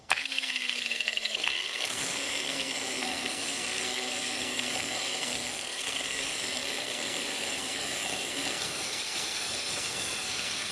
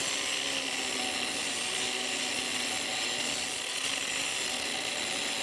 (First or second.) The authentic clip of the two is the second